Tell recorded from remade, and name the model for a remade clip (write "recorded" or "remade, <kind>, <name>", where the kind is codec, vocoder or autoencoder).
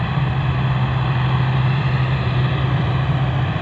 remade, vocoder, BigVGAN v2